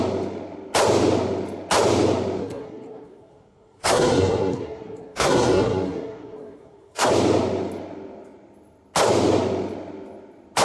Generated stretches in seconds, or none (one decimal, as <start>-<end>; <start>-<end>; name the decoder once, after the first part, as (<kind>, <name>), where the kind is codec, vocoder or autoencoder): 2.4-7.1 (codec, SNAC)